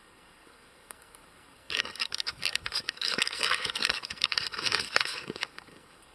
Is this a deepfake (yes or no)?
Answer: yes